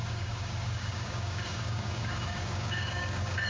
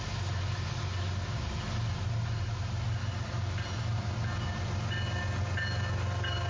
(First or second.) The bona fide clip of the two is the second